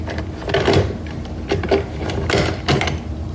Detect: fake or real real